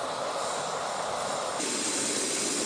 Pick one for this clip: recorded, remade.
recorded